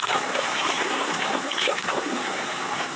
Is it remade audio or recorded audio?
remade